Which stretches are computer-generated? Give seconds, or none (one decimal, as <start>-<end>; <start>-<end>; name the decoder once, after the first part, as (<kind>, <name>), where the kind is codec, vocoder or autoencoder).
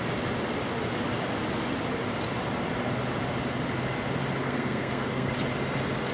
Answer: 4.4-5.3 (codec, SNAC)